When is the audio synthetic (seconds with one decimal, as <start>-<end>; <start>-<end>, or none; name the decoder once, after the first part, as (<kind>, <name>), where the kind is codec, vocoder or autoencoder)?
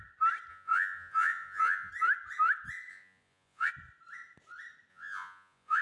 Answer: 0.5-1.9 (vocoder, Vocos); 2.9-3.7; 4.9-5.8